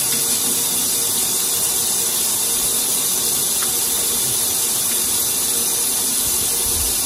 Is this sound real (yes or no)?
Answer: yes